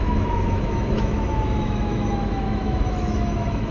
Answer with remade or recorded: remade